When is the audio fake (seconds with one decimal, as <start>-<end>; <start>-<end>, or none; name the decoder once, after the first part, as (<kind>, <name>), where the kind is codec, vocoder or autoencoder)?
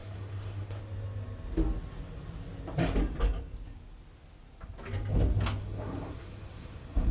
0.0-0.8 (codec, SNAC); 5.6-7.1